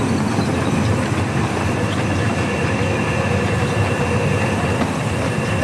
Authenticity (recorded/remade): recorded